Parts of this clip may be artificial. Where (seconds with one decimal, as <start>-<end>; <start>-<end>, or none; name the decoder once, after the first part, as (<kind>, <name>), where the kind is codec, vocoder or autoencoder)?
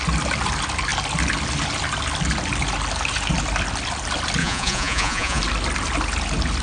4.4-5.4 (vocoder, Vocos)